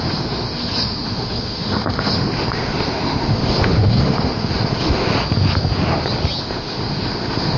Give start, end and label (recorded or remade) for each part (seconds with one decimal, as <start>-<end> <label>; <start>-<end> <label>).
0.0-5.1 remade; 5.1-6.4 recorded; 6.4-7.6 remade